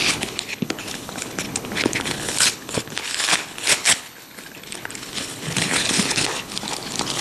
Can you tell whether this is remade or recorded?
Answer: remade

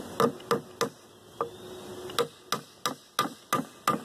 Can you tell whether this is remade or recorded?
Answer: recorded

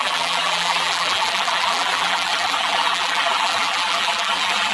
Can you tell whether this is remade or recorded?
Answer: remade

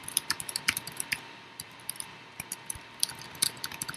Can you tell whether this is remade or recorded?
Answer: remade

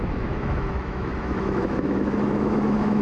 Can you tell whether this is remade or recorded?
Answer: remade